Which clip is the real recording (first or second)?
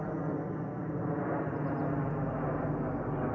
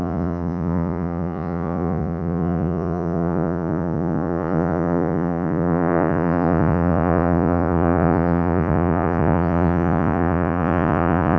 first